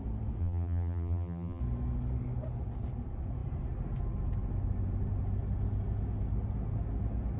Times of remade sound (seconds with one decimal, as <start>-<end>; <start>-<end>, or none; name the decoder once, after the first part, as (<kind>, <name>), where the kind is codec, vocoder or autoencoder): 0.4-1.6 (vocoder, BigVGAN v2)